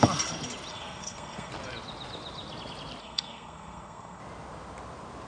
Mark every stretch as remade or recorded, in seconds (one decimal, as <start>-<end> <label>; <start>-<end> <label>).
0.0-0.7 recorded; 0.7-1.5 remade; 1.5-3.0 recorded; 3.0-4.2 remade; 4.2-5.3 recorded